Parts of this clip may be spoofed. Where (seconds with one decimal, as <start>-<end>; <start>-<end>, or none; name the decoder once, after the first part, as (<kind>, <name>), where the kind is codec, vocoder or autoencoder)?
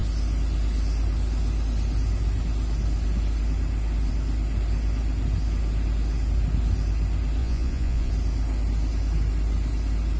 7.4-8.1 (vocoder, Vocos)